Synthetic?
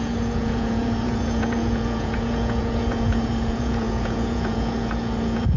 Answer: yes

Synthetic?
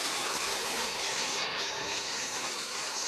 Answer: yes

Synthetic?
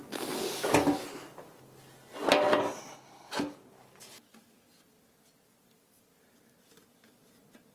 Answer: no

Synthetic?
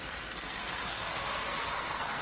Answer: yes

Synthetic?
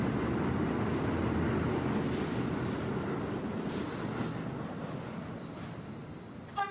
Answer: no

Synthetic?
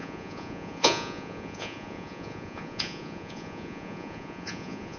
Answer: yes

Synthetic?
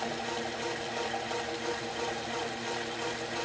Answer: no